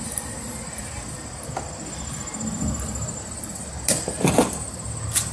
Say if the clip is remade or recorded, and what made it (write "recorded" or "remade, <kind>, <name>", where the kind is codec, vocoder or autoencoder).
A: recorded